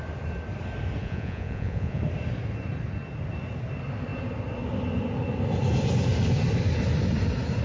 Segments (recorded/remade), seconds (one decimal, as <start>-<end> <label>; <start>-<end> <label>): 0.0-1.0 recorded; 1.0-2.0 remade; 2.0-7.6 recorded